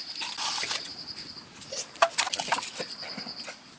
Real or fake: real